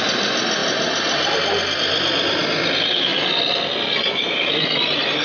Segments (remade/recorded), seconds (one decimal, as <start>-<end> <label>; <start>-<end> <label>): 0.0-5.2 recorded